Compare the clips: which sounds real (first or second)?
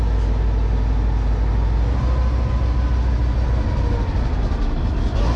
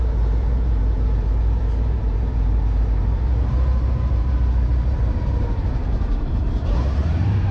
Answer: first